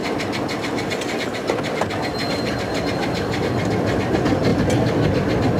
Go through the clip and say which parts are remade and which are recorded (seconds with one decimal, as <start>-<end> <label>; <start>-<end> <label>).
0.0-5.6 recorded